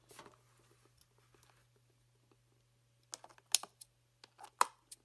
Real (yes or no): yes